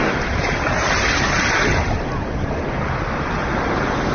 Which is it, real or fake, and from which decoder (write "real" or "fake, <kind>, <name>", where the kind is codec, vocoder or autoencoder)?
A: real